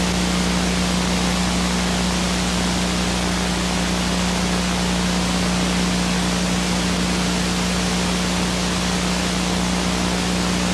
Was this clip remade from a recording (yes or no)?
no